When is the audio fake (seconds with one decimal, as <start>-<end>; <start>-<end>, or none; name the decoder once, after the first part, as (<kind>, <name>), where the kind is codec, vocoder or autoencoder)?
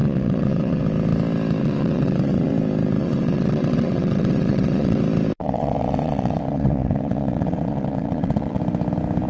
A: 0.0-0.8 (vocoder, WaveNeXt); 1.6-2.5; 3.0-5.0; 5.4-8.6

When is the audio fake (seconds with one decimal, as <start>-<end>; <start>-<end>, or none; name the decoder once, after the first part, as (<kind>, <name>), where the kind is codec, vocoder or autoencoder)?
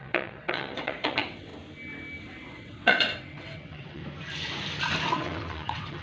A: 0.0-1.5 (vocoder, WaveNeXt); 2.2-4.0; 5.1-6.0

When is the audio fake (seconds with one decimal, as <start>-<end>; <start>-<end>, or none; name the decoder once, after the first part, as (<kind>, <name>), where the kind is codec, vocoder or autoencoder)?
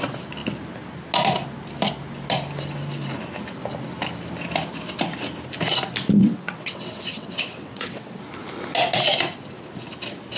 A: 6.2-8.2 (vocoder, WaveNeXt)